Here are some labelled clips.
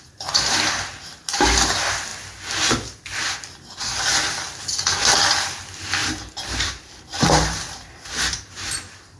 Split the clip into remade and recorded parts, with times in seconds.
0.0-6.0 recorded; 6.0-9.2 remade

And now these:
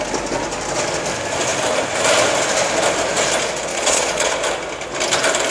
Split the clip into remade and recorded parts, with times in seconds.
0.0-3.7 recorded; 3.7-4.3 remade; 4.3-5.5 recorded

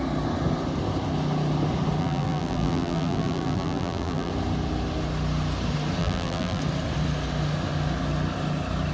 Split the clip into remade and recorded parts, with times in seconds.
0.0-2.0 recorded; 2.0-4.3 remade; 4.3-6.0 recorded; 6.0-6.6 remade; 6.6-8.9 recorded

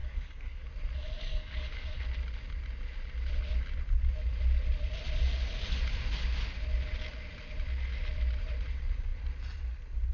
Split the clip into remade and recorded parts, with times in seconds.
0.0-0.7 remade; 0.7-1.3 recorded; 1.3-2.0 remade; 2.0-10.1 recorded

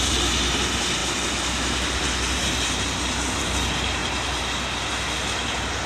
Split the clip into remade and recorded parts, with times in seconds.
0.0-5.9 recorded

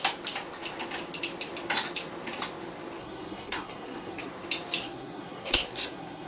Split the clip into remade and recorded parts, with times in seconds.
0.0-3.0 recorded; 3.0-4.3 remade; 4.3-4.8 recorded; 4.8-6.3 remade

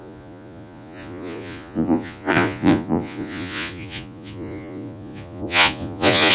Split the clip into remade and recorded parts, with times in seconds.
0.0-6.3 remade

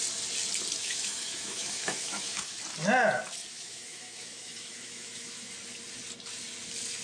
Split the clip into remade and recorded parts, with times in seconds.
0.0-0.8 recorded; 0.8-2.6 remade; 2.6-3.5 recorded; 3.5-5.5 remade; 5.5-7.0 recorded